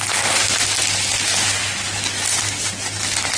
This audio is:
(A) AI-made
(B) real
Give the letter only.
B